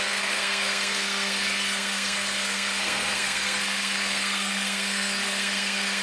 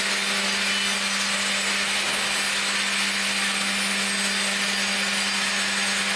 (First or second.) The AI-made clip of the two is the first